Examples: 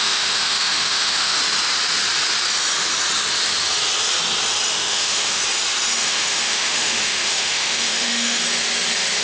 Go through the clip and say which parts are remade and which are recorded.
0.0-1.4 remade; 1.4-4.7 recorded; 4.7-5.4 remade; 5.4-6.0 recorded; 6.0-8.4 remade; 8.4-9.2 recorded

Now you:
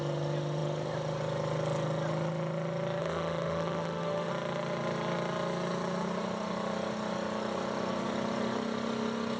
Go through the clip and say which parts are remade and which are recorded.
0.0-3.0 recorded; 3.0-4.3 remade; 4.3-9.4 recorded

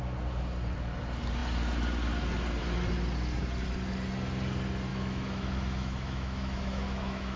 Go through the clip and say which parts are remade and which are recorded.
0.0-4.9 recorded; 4.9-7.4 remade

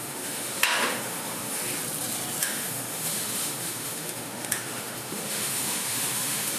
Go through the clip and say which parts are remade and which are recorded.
0.0-1.6 remade; 1.6-2.4 recorded; 2.4-6.6 remade

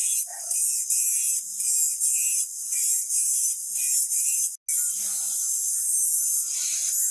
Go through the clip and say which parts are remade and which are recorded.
0.0-7.1 recorded

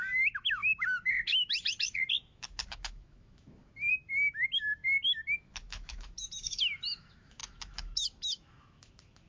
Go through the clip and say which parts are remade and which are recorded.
0.0-9.3 remade